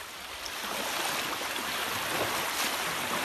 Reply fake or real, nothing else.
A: fake